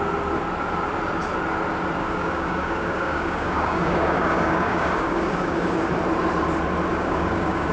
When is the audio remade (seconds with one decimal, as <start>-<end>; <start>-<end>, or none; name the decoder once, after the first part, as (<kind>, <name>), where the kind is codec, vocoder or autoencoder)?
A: 2.0-5.9 (codec, DAC); 6.9-7.7